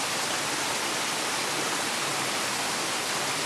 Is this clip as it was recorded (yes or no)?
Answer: yes